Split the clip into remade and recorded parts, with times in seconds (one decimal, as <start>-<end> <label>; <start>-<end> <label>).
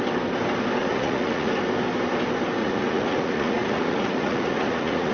0.0-0.8 recorded; 0.8-1.5 remade; 1.5-2.6 recorded; 2.6-5.1 remade